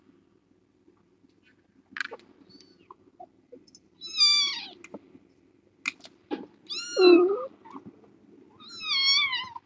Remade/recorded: recorded